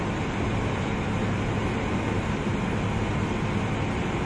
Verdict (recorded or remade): recorded